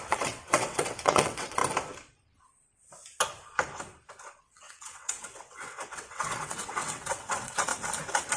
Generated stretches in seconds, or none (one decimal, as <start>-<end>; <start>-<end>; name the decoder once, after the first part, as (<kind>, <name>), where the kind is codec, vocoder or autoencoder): 0.0-1.6 (vocoder, WaveNeXt); 4.4-7.7